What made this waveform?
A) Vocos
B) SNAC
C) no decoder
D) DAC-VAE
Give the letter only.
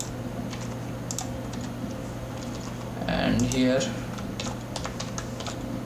C